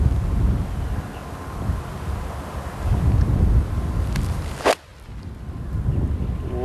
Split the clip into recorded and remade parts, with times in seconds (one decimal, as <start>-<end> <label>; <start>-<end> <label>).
0.0-6.6 recorded